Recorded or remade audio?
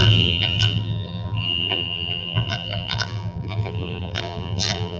remade